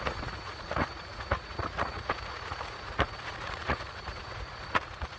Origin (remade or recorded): remade